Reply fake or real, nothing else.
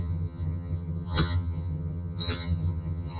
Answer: fake